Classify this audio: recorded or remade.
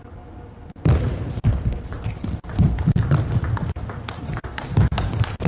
remade